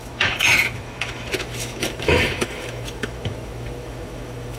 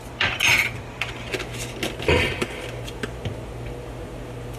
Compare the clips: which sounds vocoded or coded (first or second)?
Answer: first